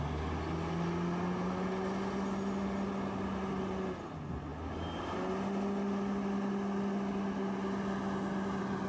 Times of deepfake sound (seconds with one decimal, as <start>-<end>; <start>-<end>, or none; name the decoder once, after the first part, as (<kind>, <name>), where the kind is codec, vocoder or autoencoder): none

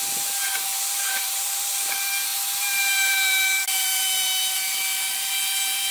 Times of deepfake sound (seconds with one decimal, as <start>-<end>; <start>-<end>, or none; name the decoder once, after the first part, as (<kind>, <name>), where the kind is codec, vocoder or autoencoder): 0.7-1.7 (vocoder, BigVGAN v2); 2.3-5.9

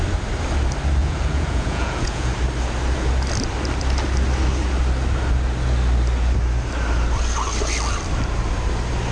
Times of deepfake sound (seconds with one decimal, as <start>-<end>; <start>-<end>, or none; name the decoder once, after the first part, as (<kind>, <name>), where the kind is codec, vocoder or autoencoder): 1.0-2.3 (vocoder, Vocos)